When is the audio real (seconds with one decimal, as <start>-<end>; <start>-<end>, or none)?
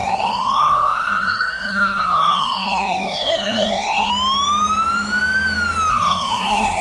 4.1-5.9